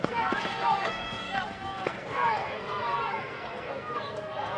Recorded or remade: remade